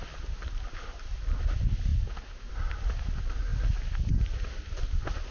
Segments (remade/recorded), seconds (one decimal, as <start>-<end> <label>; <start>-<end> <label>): 0.0-5.3 recorded